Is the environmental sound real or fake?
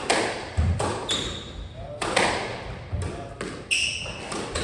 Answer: real